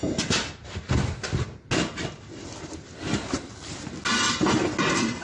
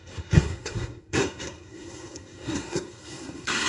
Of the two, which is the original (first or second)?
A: first